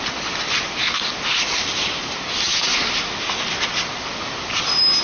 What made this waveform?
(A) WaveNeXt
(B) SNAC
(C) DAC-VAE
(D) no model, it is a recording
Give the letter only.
D